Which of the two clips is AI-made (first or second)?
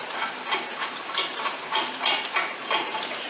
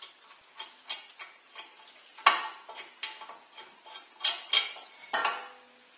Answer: first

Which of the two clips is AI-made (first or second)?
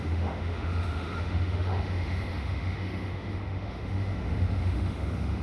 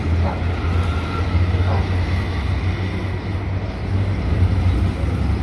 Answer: first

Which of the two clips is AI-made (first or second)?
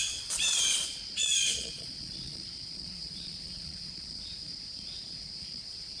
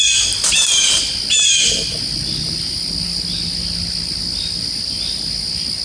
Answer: first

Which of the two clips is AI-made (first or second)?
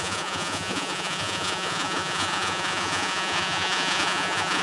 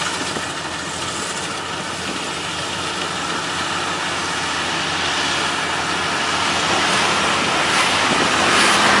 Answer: first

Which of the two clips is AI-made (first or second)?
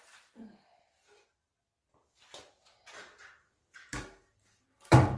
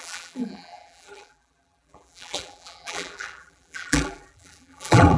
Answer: second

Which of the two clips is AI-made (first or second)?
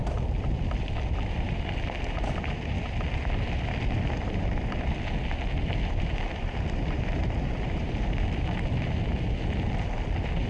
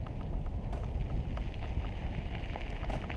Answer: first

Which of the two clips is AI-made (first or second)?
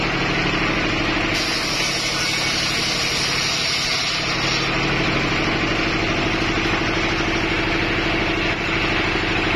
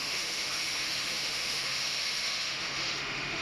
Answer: second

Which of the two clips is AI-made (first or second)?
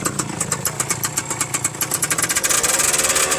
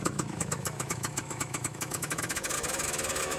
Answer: second